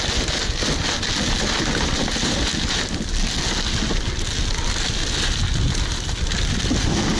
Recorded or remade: recorded